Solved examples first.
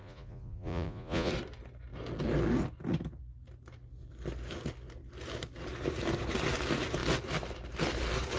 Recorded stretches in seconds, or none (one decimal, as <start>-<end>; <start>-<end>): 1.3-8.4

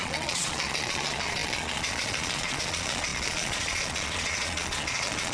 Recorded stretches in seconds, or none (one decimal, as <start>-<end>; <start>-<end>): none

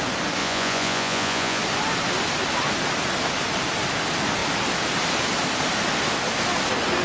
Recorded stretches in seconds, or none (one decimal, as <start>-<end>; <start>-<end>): 0.0-0.4; 1.6-7.0

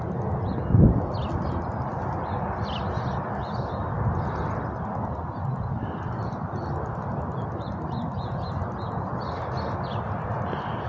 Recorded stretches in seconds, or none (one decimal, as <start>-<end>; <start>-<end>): 0.0-10.9

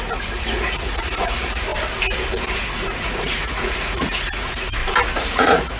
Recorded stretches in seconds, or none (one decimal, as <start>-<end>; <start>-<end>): 1.7-2.6; 4.8-5.3

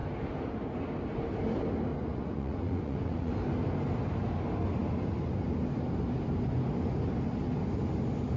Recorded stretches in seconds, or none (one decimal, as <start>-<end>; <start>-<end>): 0.0-1.9; 3.3-8.4